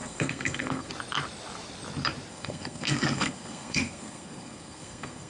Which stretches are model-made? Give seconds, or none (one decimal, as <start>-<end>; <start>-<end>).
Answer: 0.0-0.9; 2.3-5.3